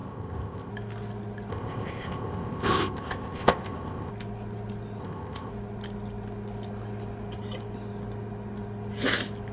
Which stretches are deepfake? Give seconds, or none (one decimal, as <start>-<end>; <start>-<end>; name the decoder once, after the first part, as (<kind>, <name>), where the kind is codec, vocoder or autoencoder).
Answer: 0.0-0.7 (codec, ZipCodec); 1.5-4.1; 5.0-5.5